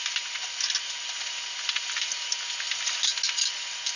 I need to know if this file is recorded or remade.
recorded